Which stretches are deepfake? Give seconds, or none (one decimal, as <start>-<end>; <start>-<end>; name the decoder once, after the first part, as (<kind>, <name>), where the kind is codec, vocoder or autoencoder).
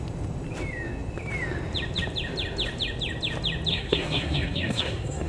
3.7-5.3 (codec, SNAC)